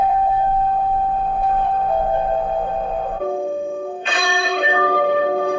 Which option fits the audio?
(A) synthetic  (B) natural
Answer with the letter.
A